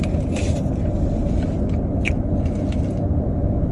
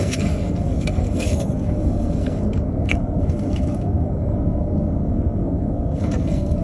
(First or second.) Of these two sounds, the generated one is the second